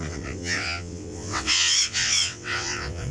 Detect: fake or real fake